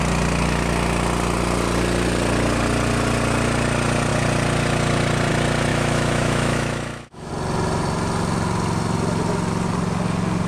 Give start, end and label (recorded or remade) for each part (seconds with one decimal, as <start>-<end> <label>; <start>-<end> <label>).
0.0-5.7 recorded; 5.7-7.3 remade; 7.3-10.5 recorded